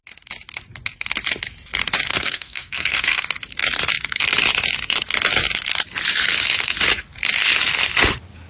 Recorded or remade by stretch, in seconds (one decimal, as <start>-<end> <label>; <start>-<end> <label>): 0.0-2.1 recorded; 2.1-3.2 remade; 3.2-8.5 recorded